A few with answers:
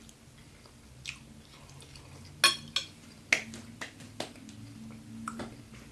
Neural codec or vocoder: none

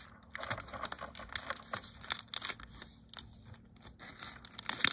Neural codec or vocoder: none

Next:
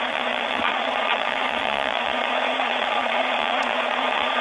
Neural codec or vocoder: vocoder, Vocos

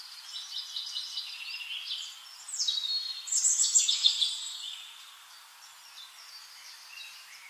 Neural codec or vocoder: none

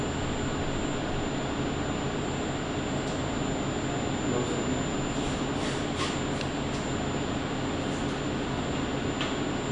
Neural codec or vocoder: none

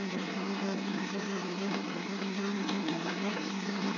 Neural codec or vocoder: codec, SNAC